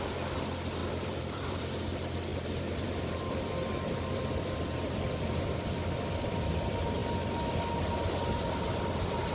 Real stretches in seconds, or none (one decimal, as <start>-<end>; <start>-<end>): 0.0-0.8; 1.8-2.3; 6.6-9.3